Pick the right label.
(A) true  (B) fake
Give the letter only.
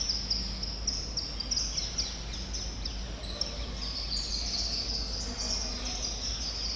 A